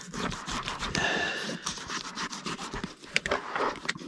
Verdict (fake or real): fake